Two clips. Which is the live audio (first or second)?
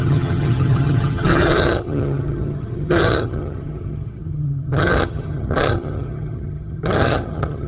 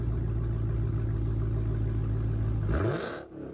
second